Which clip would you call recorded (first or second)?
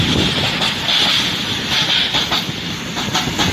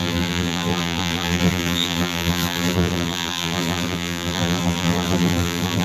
first